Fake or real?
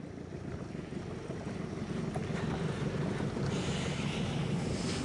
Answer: real